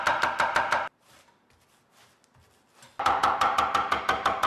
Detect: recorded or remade recorded